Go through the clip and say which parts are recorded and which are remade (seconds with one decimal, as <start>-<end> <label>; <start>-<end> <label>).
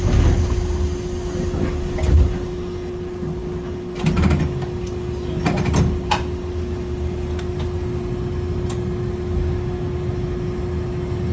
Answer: 0.0-11.3 recorded